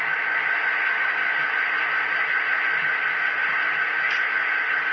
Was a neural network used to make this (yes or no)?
no